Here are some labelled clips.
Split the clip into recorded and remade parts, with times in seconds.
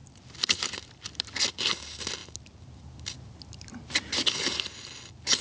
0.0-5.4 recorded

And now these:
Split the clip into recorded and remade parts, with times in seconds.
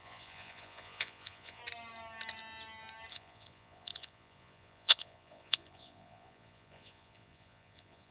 0.0-1.6 remade; 1.6-3.1 recorded; 3.1-8.1 remade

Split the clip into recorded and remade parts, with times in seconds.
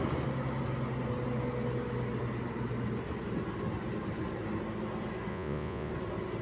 0.0-5.3 recorded; 5.3-5.9 remade; 5.9-6.4 recorded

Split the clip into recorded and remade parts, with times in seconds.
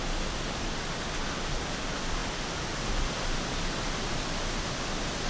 0.0-5.3 recorded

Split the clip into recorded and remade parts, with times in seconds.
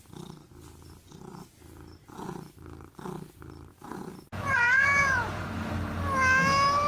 0.0-3.7 recorded; 3.7-5.7 remade; 5.7-6.9 recorded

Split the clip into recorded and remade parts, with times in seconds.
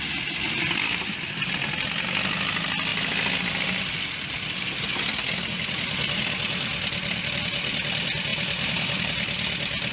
0.0-9.9 recorded